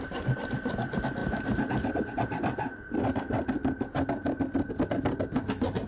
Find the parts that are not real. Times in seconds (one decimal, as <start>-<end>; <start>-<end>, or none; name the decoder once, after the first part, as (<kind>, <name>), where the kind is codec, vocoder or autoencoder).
none